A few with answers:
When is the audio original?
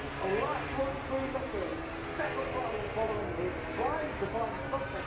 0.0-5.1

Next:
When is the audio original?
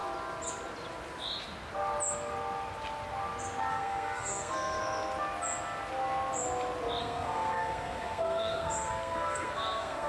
0.0-3.7; 4.8-7.0